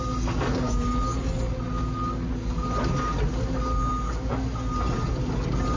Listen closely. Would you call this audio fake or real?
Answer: real